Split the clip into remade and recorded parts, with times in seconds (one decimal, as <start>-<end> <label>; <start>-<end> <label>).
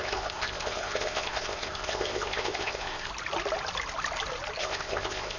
0.0-3.1 remade; 3.1-4.6 recorded; 4.6-5.4 remade